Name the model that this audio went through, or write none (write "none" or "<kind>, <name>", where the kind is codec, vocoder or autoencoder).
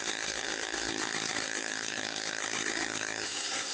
codec, SNAC